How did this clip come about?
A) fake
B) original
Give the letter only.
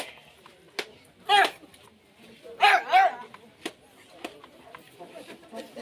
B